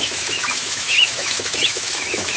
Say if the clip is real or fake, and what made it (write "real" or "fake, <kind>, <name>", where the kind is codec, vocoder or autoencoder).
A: fake, autoencoder, DAC-VAE